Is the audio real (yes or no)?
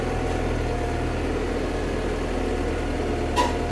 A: yes